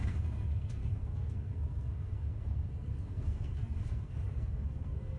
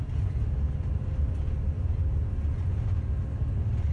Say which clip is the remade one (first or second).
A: first